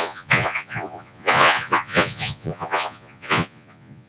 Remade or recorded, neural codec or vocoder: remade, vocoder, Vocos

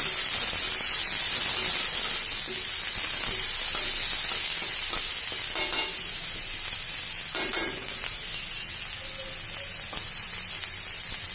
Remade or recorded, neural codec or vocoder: recorded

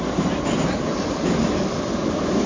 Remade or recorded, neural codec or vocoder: recorded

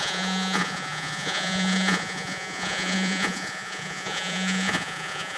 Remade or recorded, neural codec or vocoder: remade, vocoder, Vocos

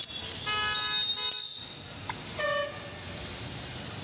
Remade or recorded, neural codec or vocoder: recorded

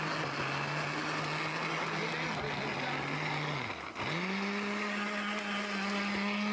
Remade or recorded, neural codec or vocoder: recorded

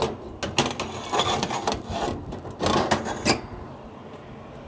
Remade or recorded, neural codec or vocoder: recorded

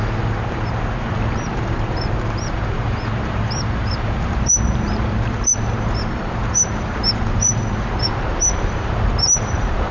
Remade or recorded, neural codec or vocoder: remade, vocoder, BigVGAN v2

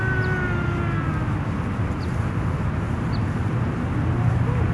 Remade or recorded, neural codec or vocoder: recorded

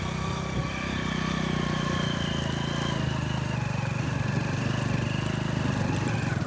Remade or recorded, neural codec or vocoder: recorded